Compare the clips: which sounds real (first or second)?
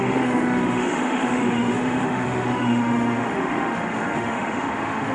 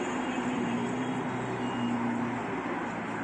second